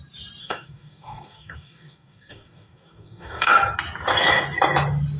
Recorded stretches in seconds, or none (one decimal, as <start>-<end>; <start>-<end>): 0.0-0.4; 3.5-5.2